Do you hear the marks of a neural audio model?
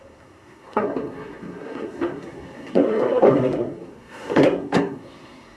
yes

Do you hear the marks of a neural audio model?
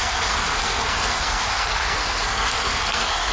yes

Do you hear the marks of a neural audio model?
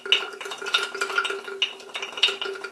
no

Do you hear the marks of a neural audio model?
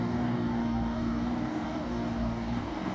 yes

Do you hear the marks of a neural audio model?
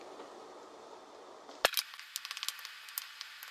no